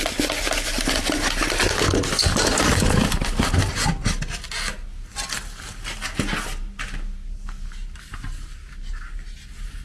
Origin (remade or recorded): recorded